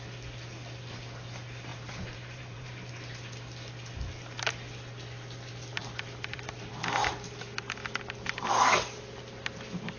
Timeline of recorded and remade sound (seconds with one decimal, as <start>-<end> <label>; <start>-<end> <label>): 0.0-1.7 recorded; 1.7-2.9 remade; 2.9-5.8 recorded; 5.8-6.7 remade; 6.7-10.0 recorded